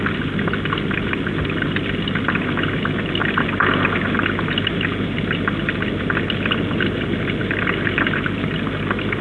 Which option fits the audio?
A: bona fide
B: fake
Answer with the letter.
A